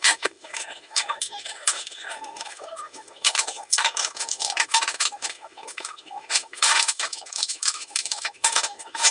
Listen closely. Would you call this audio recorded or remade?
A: remade